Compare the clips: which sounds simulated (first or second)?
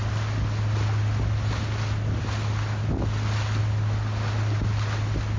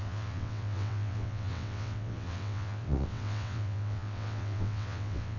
second